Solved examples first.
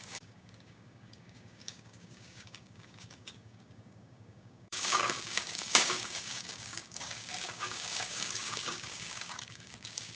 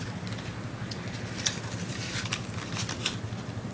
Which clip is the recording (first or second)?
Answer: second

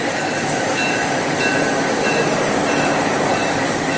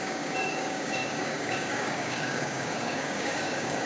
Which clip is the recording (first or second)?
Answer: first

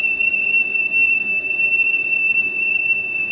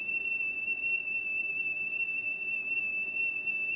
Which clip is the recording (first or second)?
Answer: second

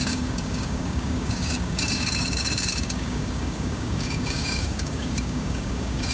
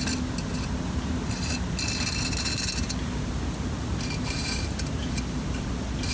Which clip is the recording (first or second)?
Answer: second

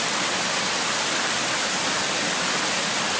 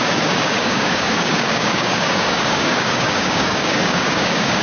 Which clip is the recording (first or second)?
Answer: first